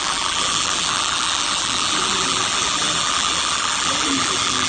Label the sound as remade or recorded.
remade